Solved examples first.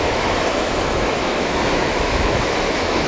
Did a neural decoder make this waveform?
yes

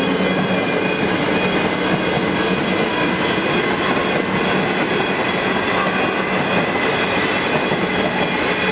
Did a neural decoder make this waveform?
no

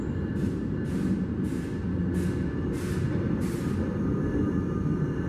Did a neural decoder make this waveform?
no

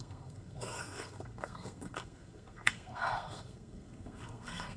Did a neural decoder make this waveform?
yes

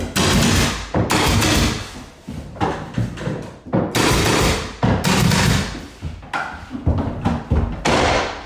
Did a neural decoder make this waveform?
no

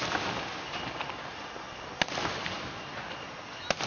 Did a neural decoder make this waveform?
no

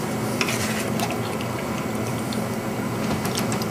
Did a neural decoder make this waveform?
no